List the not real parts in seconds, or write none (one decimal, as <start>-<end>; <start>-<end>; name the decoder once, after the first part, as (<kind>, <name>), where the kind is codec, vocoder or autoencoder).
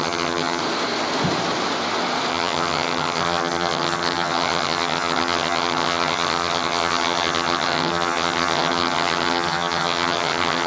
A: 0.0-0.6 (vocoder, HiFi-GAN); 2.3-10.7